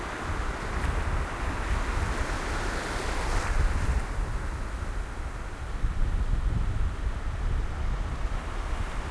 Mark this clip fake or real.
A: real